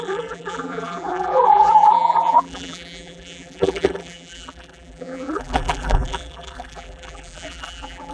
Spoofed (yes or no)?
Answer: yes